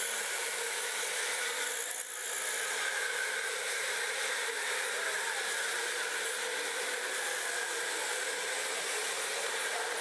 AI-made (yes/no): no